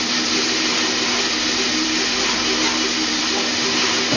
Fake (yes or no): no